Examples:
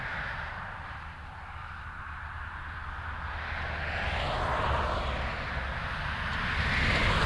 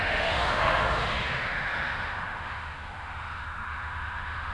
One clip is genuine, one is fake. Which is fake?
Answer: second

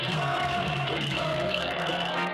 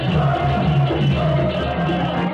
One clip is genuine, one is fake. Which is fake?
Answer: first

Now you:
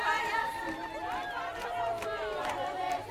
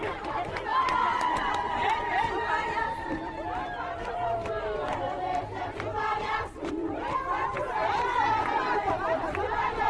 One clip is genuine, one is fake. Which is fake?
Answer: second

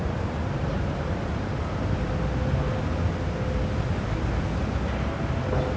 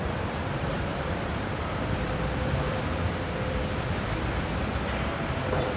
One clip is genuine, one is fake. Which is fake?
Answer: second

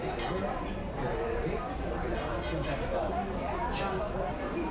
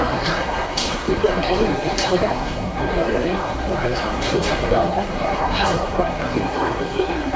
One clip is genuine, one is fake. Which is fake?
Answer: second